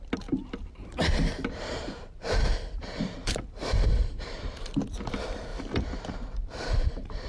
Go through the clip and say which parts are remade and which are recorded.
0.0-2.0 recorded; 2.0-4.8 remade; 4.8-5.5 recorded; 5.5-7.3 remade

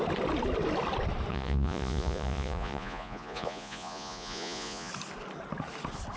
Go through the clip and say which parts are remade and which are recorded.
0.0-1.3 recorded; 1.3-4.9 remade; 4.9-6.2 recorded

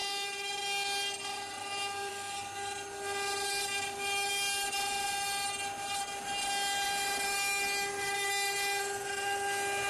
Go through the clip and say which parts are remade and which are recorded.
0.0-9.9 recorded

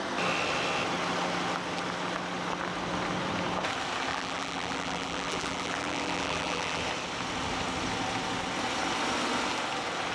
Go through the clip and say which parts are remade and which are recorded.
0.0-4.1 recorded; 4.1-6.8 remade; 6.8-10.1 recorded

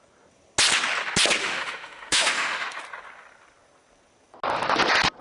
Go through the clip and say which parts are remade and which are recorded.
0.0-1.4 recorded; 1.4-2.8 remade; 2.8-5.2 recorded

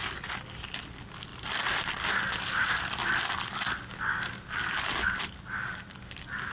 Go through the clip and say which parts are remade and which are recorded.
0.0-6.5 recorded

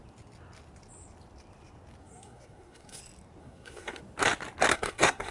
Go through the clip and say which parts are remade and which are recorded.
0.0-2.0 recorded; 2.0-3.0 remade; 3.0-3.4 recorded; 3.4-4.0 remade; 4.0-4.7 recorded; 4.7-5.3 remade

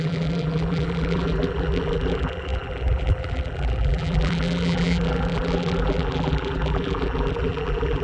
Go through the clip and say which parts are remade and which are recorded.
0.0-8.0 remade